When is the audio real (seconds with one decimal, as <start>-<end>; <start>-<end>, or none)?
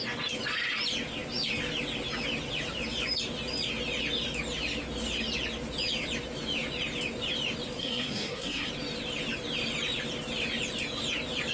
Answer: 0.0-7.8; 8.7-11.5